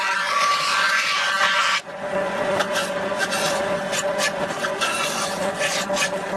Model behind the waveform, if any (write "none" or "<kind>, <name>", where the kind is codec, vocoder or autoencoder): vocoder, Vocos